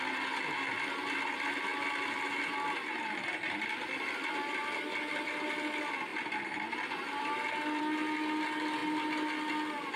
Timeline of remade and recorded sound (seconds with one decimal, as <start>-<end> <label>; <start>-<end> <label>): 0.0-10.0 recorded